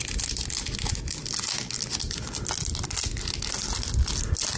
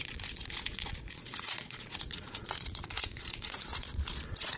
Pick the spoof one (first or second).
second